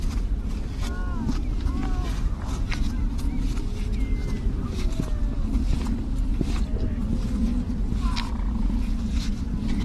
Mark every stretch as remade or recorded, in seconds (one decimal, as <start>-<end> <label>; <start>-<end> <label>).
0.0-1.0 recorded; 1.0-2.7 remade; 2.7-9.8 recorded